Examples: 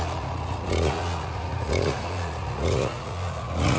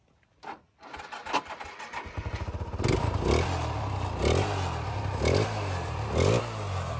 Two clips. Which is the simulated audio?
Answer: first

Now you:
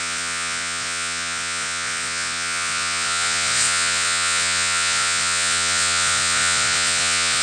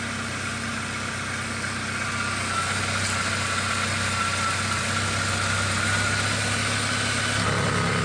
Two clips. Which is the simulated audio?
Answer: first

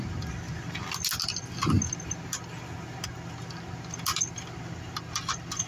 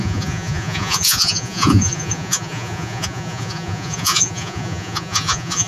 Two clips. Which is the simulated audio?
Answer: second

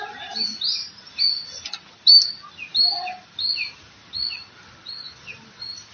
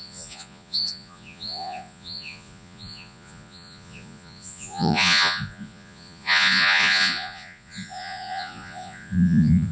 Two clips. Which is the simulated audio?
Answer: second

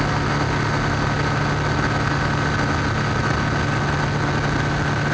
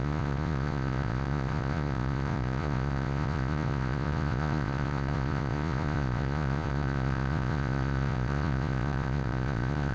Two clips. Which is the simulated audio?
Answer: second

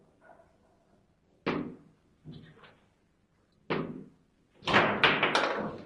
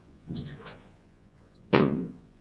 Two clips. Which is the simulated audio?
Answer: second